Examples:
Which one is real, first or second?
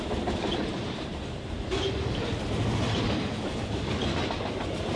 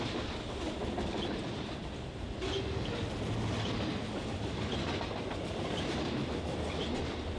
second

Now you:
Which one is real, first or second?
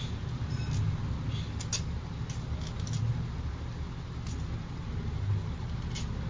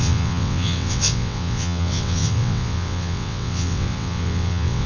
first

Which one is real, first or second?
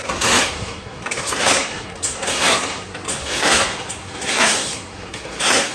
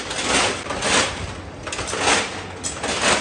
second